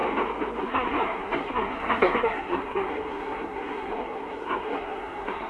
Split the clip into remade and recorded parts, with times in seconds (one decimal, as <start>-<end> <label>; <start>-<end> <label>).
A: 0.0-0.6 recorded; 0.6-5.5 remade

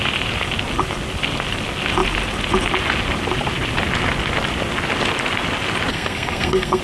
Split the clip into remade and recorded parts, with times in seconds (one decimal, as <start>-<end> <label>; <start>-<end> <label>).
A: 0.0-5.9 recorded; 5.9-6.8 remade

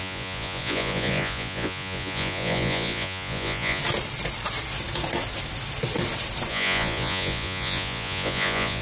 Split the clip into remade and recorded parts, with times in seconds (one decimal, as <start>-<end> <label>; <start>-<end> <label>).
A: 0.0-3.8 remade; 3.8-6.5 recorded; 6.5-8.8 remade

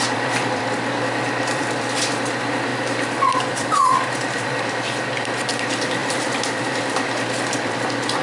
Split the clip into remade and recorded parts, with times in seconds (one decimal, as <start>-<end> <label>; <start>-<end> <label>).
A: 0.0-2.7 remade; 2.7-3.5 recorded; 3.5-8.2 remade

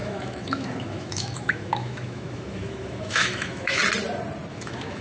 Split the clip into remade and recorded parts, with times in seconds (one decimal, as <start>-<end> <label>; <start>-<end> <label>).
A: 0.0-3.8 remade; 3.8-4.5 recorded; 4.5-5.0 remade

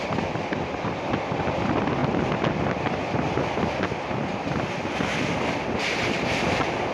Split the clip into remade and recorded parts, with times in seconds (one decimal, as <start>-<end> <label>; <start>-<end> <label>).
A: 0.0-6.9 recorded

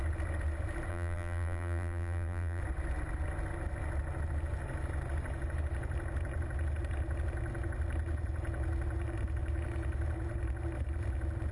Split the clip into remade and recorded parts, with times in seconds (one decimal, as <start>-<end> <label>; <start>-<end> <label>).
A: 0.0-0.9 recorded; 0.9-2.6 remade; 2.6-11.5 recorded

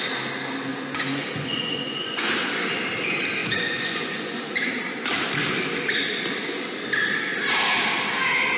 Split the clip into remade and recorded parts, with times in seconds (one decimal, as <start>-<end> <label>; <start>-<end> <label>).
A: 0.0-0.7 recorded; 0.7-2.3 remade; 2.3-3.4 recorded; 3.4-4.7 remade; 4.7-8.6 recorded